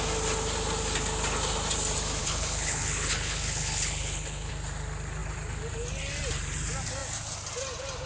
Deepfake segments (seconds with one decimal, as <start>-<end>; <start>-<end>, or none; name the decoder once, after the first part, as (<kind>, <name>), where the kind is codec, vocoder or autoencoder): 2.2-4.5 (codec, HILCodec)